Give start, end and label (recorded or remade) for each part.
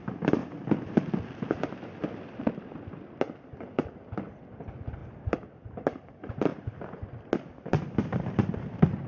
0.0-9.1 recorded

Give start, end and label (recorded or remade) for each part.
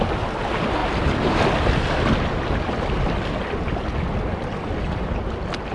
0.0-5.7 recorded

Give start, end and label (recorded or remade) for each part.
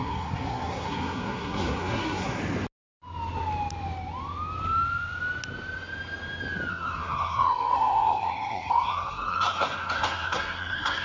0.0-2.4 remade; 2.4-6.7 recorded; 6.7-11.0 remade